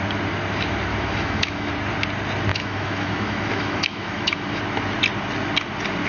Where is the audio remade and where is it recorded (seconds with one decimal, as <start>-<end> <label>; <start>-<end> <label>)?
0.0-0.9 recorded; 0.9-1.7 remade; 1.7-2.5 recorded; 2.5-4.6 remade; 4.6-6.1 recorded